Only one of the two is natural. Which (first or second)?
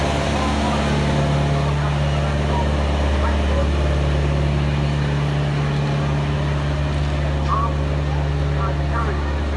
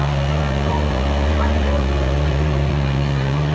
first